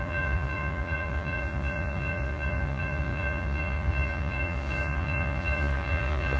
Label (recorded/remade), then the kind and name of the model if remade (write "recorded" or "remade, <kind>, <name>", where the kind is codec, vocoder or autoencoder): remade, vocoder, Vocos